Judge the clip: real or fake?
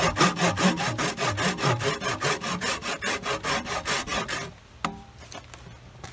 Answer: real